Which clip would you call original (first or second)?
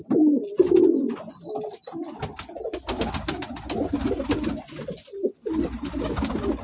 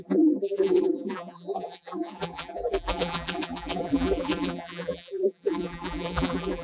first